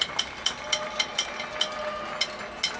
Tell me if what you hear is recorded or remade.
recorded